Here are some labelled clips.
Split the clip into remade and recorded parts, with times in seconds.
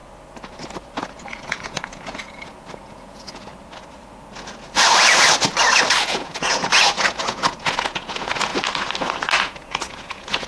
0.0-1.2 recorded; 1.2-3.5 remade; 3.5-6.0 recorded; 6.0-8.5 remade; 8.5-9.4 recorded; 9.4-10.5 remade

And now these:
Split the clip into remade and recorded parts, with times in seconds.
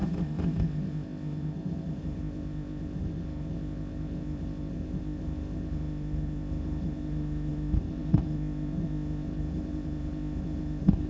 0.0-11.1 remade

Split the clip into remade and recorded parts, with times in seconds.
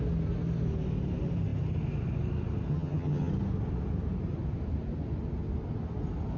0.0-2.7 recorded; 2.7-3.3 remade; 3.3-6.4 recorded